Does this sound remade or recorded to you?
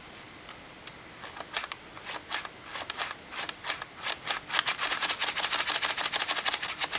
recorded